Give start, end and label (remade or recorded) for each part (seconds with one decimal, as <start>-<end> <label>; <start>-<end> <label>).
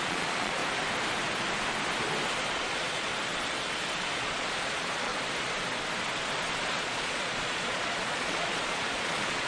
0.0-0.6 remade; 0.6-2.5 recorded; 2.5-3.1 remade; 3.1-4.2 recorded; 4.2-5.1 remade; 5.1-6.8 recorded; 6.8-9.5 remade